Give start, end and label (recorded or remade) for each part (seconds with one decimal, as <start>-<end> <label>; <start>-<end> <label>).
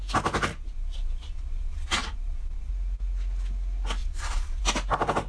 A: 0.0-0.5 recorded; 0.5-2.7 remade; 2.7-4.0 recorded; 4.0-4.6 remade; 4.6-5.3 recorded